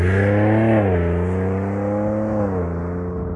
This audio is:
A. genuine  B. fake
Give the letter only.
A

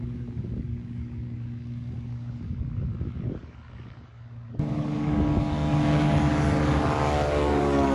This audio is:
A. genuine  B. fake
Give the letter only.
B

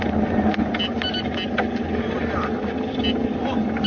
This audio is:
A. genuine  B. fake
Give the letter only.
A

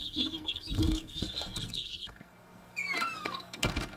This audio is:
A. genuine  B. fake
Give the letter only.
B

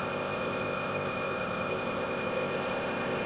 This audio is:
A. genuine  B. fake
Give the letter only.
B